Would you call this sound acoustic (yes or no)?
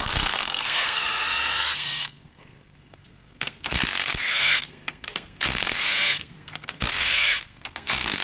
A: no